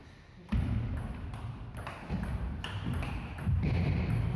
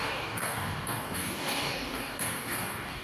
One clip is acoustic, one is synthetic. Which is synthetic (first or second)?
second